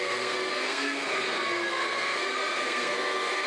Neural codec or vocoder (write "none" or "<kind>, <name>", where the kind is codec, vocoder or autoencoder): codec, SNAC